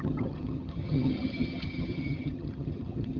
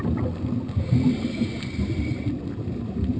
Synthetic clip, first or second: first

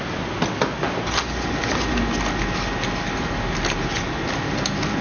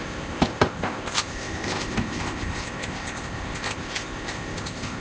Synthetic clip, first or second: second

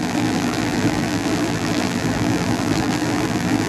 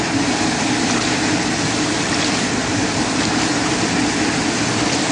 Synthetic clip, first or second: first